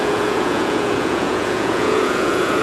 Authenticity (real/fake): fake